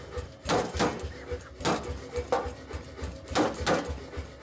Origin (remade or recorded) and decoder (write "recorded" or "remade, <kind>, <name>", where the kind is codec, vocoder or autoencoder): recorded